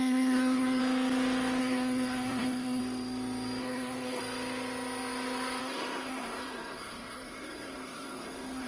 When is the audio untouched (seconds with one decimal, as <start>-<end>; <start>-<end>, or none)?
0.8-1.6; 2.8-3.6; 4.2-5.6